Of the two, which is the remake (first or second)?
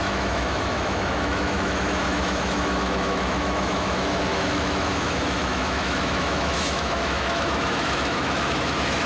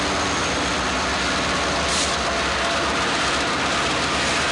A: first